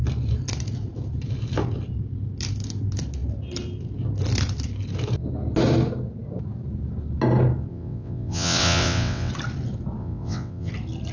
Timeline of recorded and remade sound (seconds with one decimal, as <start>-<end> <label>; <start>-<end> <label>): 0.0-7.7 recorded; 7.7-9.3 remade; 9.3-10.0 recorded; 10.0-10.7 remade; 10.7-11.1 recorded

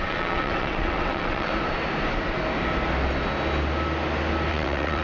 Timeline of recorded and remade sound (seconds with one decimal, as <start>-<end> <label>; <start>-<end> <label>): 0.0-1.5 remade; 1.5-4.5 recorded; 4.5-5.0 remade

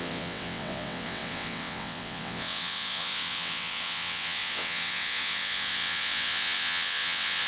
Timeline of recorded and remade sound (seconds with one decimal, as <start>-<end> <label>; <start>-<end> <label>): 0.0-7.5 remade

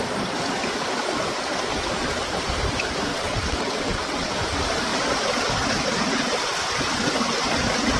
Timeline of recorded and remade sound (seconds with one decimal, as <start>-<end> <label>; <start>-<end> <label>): 0.0-3.1 recorded; 3.1-4.3 remade; 4.3-8.0 recorded

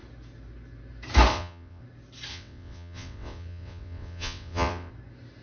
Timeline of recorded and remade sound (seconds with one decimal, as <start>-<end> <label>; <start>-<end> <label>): 0.0-1.3 recorded; 1.3-1.8 remade; 1.8-2.3 recorded; 2.3-4.9 remade; 4.9-5.4 recorded